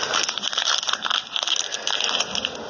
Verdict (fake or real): real